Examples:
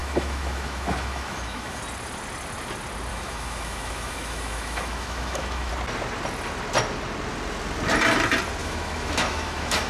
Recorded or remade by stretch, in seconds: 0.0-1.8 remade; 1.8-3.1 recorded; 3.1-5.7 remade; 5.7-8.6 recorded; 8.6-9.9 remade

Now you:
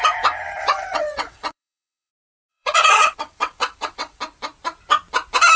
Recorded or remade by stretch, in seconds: 0.0-0.6 recorded; 0.6-2.1 remade; 2.1-2.5 recorded; 2.5-4.2 remade; 4.2-5.6 recorded

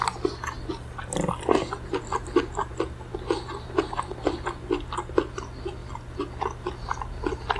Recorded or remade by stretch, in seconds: 0.0-7.6 recorded

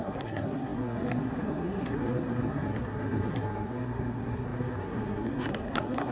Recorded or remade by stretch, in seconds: 0.0-6.1 remade